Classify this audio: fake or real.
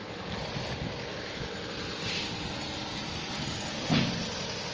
real